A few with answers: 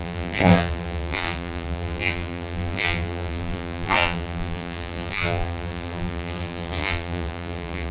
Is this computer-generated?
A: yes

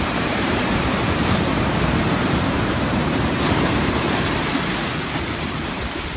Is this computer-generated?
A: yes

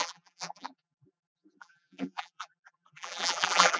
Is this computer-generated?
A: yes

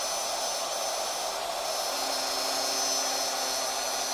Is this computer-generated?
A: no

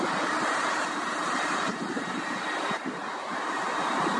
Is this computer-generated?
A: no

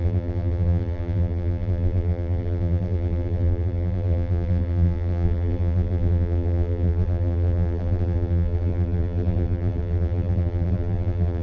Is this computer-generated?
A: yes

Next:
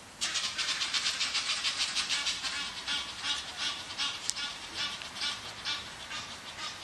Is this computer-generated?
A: yes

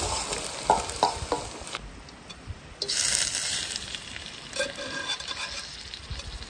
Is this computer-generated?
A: no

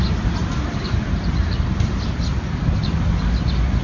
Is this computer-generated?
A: no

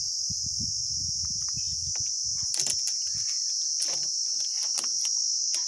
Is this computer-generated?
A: no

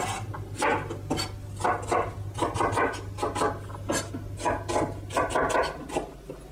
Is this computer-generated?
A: no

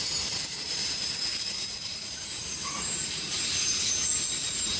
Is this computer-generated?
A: yes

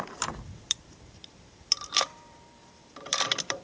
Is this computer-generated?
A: yes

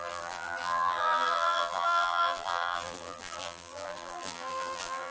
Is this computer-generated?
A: yes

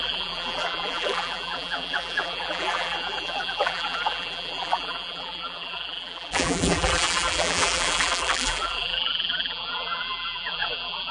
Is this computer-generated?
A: yes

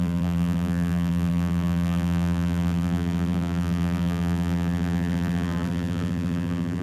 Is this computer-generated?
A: yes